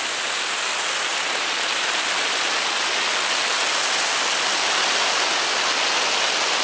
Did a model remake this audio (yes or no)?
no